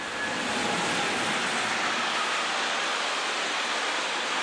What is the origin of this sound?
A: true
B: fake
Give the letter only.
A